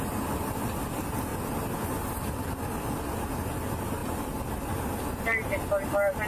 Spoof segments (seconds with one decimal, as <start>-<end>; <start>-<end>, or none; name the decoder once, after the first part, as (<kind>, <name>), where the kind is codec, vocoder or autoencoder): none